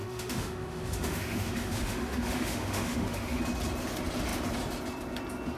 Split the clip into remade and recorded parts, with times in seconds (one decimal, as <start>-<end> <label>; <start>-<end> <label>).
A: 0.0-3.4 remade; 3.4-5.6 recorded